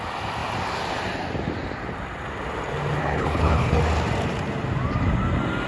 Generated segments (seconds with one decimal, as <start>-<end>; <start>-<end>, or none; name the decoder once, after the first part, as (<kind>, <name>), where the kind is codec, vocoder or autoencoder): 3.0-3.8 (codec, HILCodec)